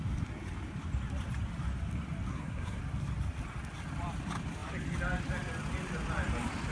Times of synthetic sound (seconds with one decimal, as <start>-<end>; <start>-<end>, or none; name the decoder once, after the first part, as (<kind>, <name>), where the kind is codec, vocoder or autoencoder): 2.3-2.8 (codec, SNAC)